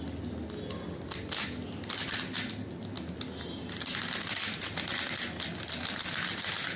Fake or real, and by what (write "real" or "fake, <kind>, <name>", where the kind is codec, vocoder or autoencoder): real